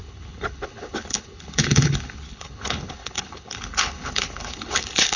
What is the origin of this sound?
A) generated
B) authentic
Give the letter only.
A